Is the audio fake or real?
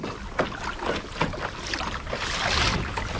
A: real